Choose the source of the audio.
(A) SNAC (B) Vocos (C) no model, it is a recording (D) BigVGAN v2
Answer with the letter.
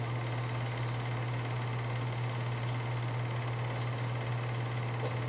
C